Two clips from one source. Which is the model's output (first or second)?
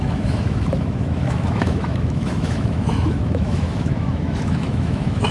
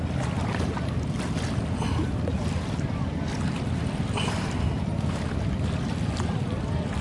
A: first